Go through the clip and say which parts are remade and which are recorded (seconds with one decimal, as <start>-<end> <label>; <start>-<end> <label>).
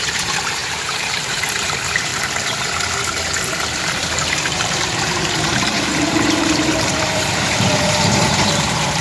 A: 0.0-2.1 remade; 2.1-3.5 recorded; 3.5-9.0 remade